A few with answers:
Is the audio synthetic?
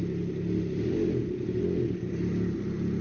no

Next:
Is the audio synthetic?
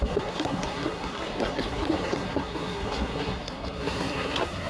yes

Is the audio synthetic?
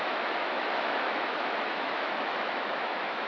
yes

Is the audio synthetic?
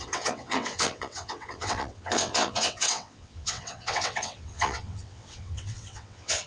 yes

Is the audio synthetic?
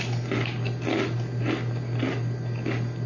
no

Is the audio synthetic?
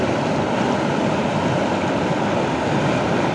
no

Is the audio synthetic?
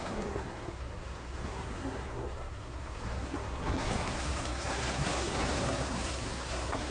yes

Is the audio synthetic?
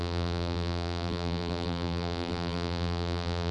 yes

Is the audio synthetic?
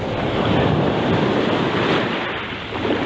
no